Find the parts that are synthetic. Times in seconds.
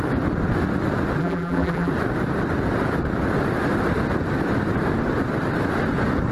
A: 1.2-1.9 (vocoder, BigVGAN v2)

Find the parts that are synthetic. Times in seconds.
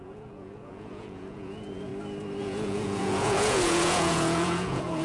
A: 0.0-1.9 (vocoder, Vocos); 2.4-5.0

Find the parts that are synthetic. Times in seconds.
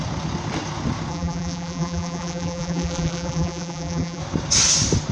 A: 1.1-4.2 (vocoder, BigVGAN v2)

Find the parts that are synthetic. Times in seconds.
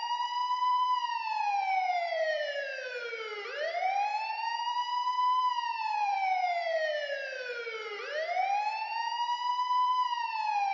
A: 0.0-8.9 (vocoder, BigVGAN v2); 9.5-10.7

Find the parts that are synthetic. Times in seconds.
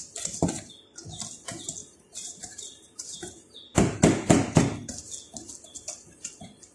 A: 1.8-3.3 (vocoder, BigVGAN v2)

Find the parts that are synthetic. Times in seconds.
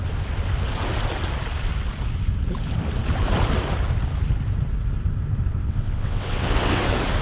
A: 5.5-6.8 (vocoder, WaveNeXt)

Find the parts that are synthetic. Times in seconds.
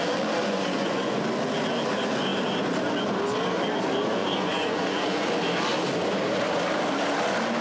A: 0.4-1.2 (vocoder, Vocos); 4.2-5.3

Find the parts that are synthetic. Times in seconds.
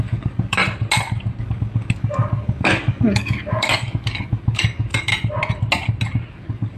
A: 0.0-0.6 (codec, DAC); 1.4-5.1; 6.3-6.8